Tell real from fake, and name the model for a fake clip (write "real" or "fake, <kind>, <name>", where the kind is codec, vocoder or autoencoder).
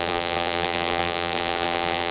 fake, vocoder, BigVGAN v2